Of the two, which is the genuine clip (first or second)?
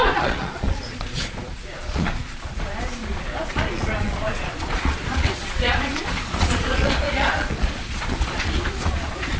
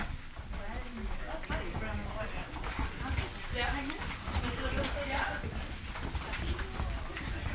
second